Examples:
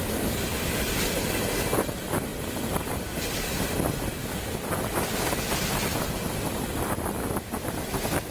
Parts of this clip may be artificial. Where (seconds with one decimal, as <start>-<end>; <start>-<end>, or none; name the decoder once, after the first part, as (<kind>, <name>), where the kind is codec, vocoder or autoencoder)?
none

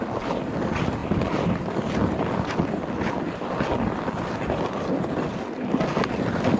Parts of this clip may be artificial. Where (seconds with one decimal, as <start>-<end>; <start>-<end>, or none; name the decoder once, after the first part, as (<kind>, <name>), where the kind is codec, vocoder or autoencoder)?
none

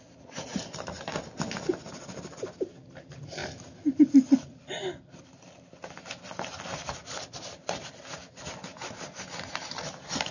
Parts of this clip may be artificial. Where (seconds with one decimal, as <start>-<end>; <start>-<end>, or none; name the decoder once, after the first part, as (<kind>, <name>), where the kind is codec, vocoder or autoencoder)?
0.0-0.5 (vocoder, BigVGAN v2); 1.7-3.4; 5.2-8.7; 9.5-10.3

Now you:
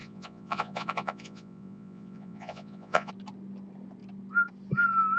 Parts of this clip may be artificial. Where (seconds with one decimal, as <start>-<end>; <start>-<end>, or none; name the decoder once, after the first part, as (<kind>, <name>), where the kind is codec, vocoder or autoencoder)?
0.0-3.1 (vocoder, Vocos)

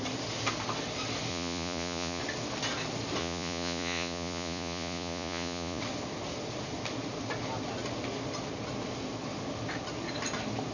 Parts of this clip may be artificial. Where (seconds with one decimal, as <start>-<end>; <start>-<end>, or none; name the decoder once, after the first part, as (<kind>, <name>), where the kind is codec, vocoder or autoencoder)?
1.3-2.2 (vocoder, Vocos); 3.2-5.8

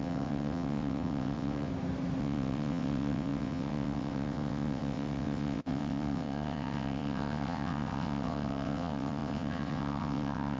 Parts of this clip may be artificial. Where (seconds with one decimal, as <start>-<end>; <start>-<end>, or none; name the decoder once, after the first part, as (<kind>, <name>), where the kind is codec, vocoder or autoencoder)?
0.0-1.7 (vocoder, WaveNeXt); 2.2-10.6